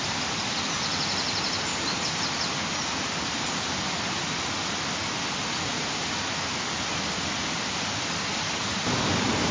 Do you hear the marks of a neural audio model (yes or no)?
no